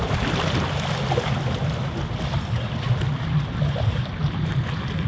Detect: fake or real real